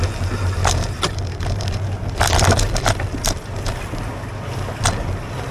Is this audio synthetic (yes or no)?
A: no